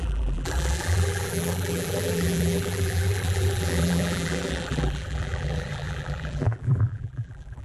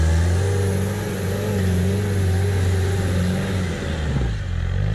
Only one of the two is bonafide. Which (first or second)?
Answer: second